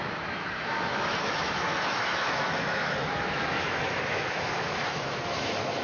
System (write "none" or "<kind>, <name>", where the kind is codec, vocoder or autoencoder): autoencoder, DAC-VAE